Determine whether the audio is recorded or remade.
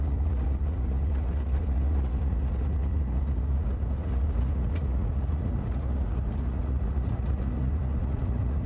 remade